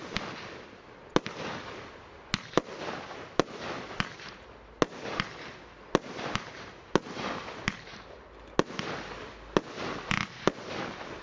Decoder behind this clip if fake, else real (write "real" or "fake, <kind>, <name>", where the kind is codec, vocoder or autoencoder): real